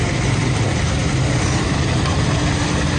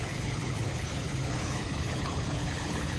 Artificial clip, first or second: second